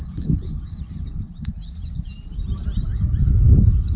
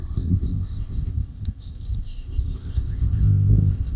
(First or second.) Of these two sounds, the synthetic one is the second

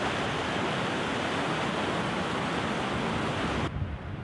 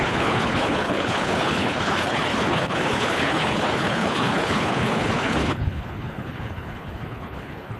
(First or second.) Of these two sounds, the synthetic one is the second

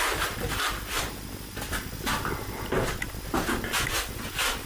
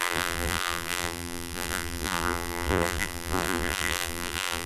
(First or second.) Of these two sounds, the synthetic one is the second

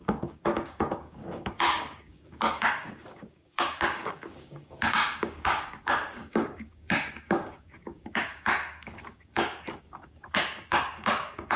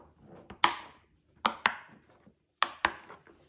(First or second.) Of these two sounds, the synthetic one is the first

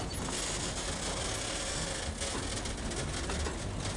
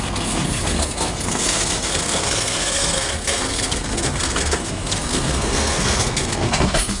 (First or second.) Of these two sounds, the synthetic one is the second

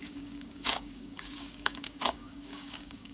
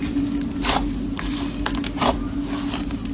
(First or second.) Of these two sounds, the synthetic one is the first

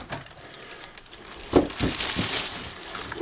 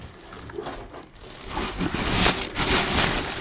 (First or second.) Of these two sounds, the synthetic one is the first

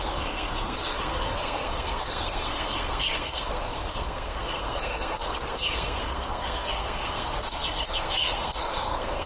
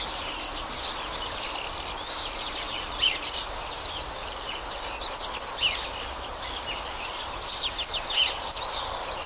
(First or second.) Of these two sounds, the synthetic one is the first